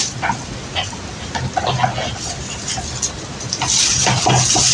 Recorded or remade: recorded